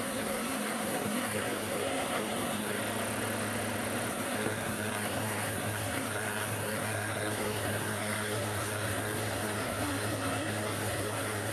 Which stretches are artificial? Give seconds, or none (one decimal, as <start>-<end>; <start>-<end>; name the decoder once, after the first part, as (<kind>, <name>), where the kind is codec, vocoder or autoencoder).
0.0-2.8 (codec, SNAC); 4.1-11.5